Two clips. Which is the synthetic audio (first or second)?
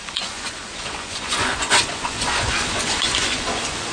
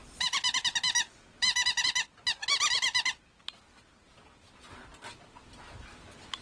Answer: first